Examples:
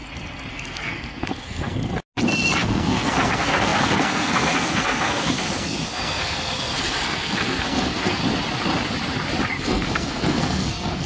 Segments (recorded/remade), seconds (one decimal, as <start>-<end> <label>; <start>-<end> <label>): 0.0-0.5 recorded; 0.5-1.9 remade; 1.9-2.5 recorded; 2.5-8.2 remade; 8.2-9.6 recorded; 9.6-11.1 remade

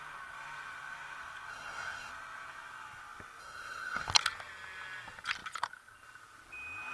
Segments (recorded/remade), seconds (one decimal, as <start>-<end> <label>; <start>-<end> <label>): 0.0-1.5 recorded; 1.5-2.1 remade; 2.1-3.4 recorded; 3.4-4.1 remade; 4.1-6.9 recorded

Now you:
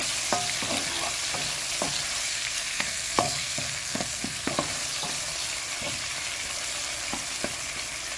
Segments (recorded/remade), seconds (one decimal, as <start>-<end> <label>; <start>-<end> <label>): 0.0-2.2 recorded; 2.2-4.5 remade; 4.5-8.2 recorded

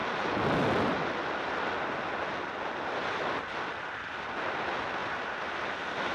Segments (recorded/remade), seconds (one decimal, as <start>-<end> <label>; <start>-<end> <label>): 0.0-6.1 recorded

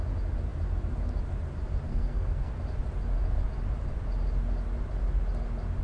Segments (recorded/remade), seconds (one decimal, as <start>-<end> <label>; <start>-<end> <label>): 0.0-1.9 recorded; 1.9-2.5 remade; 2.5-5.8 recorded

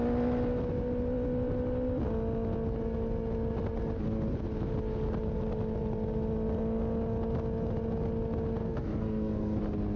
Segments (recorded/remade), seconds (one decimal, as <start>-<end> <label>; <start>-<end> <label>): 0.0-8.6 recorded; 8.6-9.6 remade; 9.6-10.0 recorded

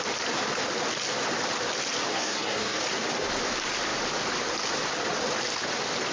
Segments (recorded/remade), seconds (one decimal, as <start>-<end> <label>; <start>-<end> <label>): 0.0-2.1 recorded; 2.1-2.8 remade; 2.8-6.1 recorded

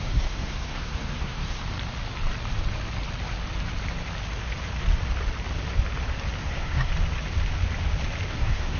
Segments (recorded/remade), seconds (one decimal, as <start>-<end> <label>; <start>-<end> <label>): 0.0-1.6 remade; 1.6-6.4 recorded; 6.4-6.9 remade; 6.9-8.3 recorded; 8.3-8.8 remade